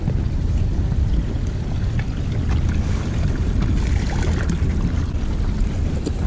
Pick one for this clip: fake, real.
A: real